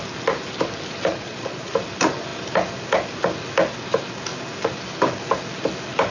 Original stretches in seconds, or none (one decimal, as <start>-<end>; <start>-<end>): 0.0-1.1; 1.7-6.1

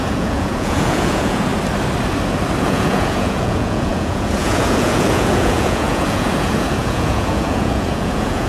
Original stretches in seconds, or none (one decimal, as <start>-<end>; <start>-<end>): 1.5-2.6

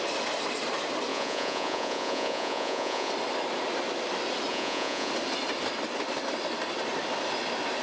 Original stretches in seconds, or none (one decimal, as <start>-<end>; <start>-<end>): 0.0-1.1; 3.1-4.5; 5.1-7.8

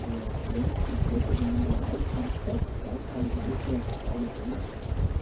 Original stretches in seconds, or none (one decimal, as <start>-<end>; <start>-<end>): 0.0-0.4; 3.5-3.9; 4.7-5.2